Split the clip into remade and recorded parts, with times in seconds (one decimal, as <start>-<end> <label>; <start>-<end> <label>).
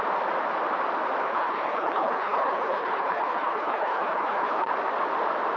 0.0-1.3 recorded; 1.3-4.7 remade; 4.7-5.6 recorded